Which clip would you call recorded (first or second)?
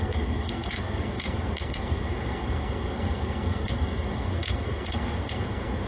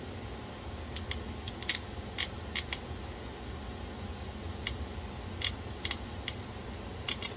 second